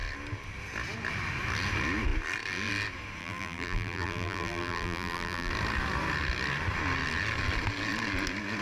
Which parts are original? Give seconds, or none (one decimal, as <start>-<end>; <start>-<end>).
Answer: 0.0-3.2; 5.5-8.6